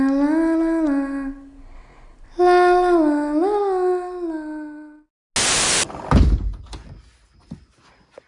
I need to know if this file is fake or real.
real